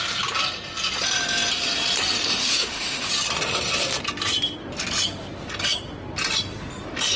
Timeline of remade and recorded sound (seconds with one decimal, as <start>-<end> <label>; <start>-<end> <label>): 0.0-2.4 recorded; 2.4-3.1 remade; 3.1-7.2 recorded